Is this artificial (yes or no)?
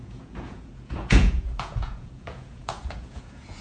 yes